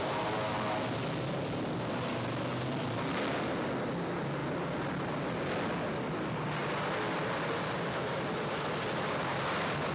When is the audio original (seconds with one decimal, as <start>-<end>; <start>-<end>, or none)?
0.0-9.9

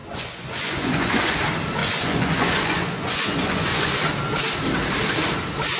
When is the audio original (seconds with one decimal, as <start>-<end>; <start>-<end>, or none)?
1.4-1.8; 3.9-5.8

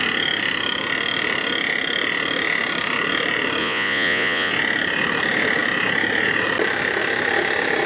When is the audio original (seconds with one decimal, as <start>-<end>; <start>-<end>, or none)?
0.0-3.6; 4.5-7.9

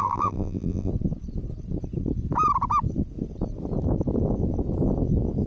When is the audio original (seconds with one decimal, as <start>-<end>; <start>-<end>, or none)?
0.9-5.5

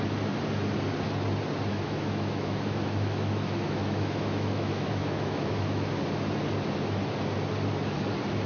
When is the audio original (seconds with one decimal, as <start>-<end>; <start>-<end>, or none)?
0.0-1.7; 5.9-8.5

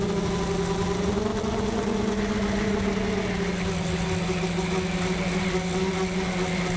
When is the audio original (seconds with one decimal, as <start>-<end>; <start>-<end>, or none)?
0.0-6.8

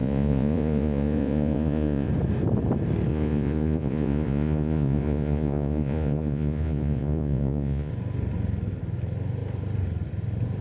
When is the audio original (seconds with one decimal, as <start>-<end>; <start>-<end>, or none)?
2.1-3.1; 7.9-10.6